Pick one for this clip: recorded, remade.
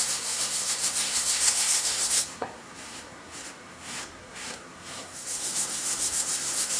remade